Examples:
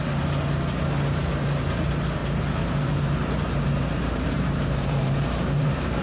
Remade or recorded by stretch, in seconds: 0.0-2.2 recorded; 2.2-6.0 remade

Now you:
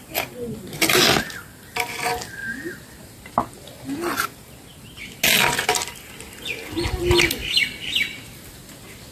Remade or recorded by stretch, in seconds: 0.0-9.1 recorded